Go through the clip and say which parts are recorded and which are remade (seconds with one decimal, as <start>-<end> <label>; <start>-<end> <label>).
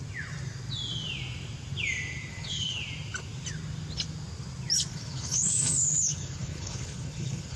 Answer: 0.0-2.3 recorded; 2.3-2.8 remade; 2.8-4.9 recorded; 4.9-7.6 remade